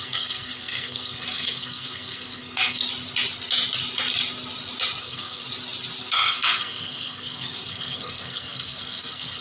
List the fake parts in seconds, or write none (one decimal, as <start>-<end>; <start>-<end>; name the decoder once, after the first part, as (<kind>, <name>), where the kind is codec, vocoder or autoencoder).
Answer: 0.0-2.8 (codec, SNAC); 5.0-5.4; 6.0-9.4